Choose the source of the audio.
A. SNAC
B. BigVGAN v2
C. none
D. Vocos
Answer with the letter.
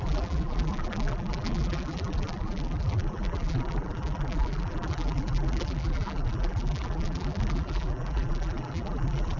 B